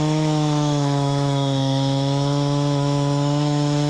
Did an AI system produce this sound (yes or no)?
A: yes